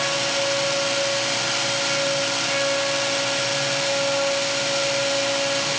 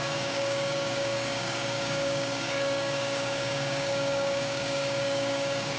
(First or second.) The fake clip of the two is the second